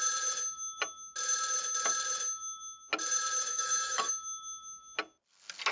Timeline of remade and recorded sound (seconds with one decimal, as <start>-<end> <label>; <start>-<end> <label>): 0.0-3.5 recorded; 3.5-4.1 remade; 4.1-5.7 recorded